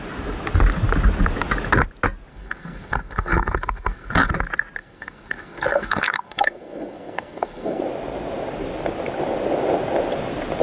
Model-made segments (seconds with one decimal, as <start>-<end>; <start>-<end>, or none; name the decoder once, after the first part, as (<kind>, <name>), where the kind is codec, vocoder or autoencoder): 2.3-4.3 (codec, SNAC); 4.8-7.8